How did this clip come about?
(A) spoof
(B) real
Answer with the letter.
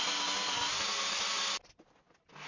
B